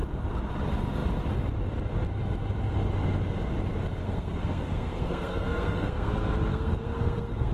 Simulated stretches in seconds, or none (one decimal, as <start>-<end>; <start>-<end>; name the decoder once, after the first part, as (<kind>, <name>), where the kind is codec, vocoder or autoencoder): 4.0-6.1 (codec, SNAC); 6.5-7.5